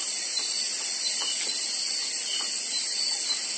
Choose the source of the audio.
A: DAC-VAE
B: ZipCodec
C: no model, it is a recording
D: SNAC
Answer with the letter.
C